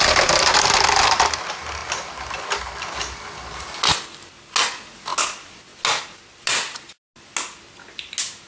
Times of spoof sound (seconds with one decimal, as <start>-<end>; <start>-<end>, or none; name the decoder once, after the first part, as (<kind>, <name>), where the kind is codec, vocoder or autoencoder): none